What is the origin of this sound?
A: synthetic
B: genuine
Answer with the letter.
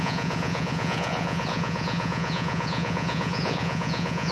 A